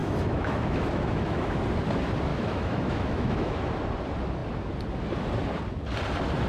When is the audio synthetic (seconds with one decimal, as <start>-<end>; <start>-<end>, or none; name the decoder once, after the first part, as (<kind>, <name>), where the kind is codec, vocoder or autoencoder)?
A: 0.0-1.6 (autoencoder, DAC-VAE); 2.3-3.7